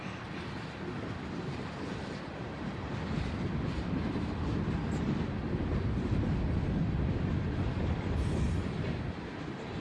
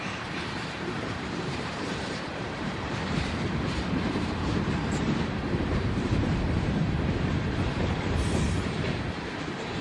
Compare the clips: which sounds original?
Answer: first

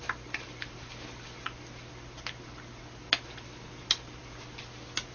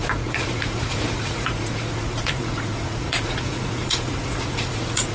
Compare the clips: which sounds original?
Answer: first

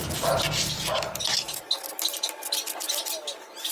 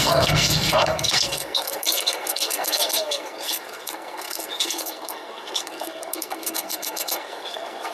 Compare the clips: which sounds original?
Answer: first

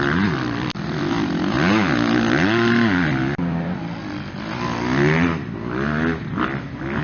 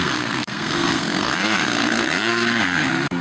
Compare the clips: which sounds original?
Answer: first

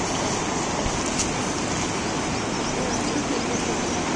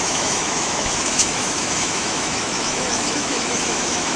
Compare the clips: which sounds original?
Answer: first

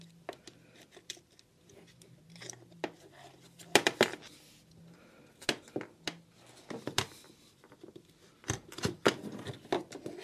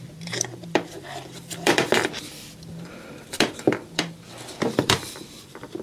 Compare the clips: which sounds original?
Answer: first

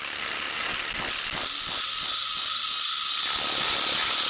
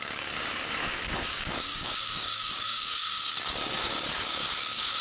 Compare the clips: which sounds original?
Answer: first